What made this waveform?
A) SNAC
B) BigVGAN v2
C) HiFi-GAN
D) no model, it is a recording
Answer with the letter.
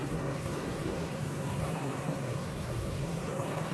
A